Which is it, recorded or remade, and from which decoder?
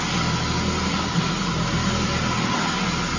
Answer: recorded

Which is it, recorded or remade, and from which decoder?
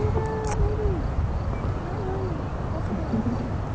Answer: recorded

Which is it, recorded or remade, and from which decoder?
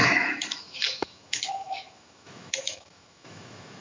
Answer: remade, autoencoder, DAC-VAE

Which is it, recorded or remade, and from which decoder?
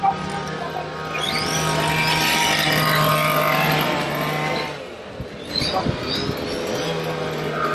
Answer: recorded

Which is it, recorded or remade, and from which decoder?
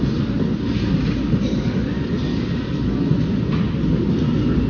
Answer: recorded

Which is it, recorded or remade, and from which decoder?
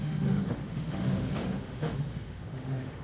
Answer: remade, autoencoder, DAC-VAE